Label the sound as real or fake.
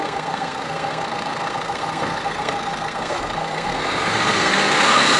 fake